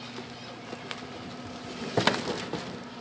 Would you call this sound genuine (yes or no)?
yes